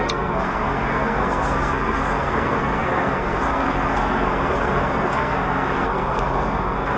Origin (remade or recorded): remade